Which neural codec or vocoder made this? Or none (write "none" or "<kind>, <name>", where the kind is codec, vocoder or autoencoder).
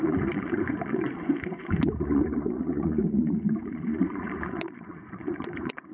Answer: vocoder, Vocos